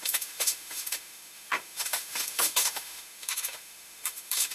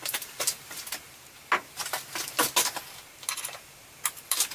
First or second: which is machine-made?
first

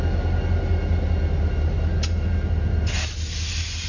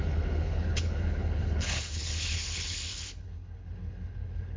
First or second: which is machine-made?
second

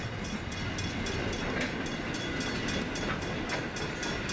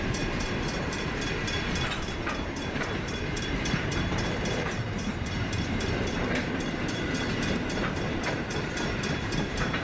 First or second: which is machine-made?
second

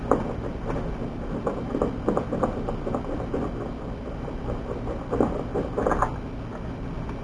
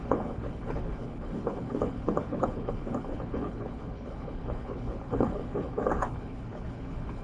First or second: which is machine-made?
second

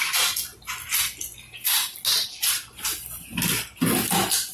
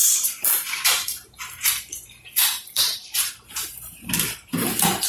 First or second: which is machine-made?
second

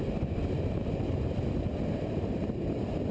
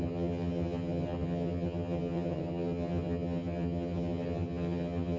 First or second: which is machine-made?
second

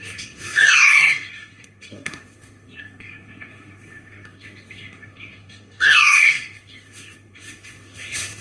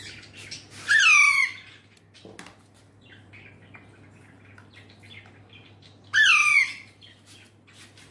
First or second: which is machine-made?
first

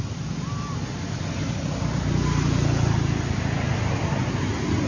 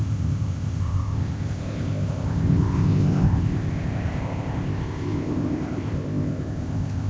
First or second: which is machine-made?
second